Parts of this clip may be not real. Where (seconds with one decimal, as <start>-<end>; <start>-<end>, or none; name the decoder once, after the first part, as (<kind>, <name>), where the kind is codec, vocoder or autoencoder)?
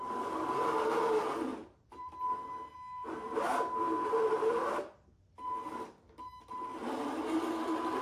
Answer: 1.5-2.1 (vocoder, BigVGAN v2)